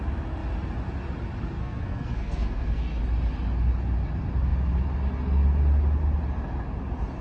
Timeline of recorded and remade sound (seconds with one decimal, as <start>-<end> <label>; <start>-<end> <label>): 0.0-1.5 recorded; 1.5-3.0 remade; 3.0-7.2 recorded